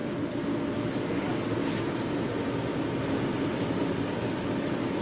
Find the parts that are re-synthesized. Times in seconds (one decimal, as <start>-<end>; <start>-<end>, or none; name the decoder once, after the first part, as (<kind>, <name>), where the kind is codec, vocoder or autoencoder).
0.9-1.3 (codec, DAC); 3.9-5.0